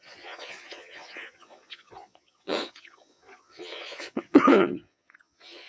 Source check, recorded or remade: remade